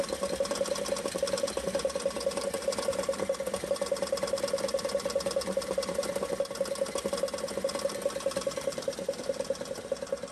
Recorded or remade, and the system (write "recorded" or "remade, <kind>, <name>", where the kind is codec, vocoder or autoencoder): remade, vocoder, BigVGAN v2